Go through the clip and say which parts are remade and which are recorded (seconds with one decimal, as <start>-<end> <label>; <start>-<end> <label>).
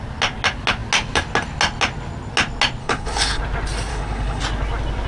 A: 0.0-2.8 recorded; 2.8-3.4 remade; 3.4-3.9 recorded; 3.9-4.4 remade; 4.4-5.1 recorded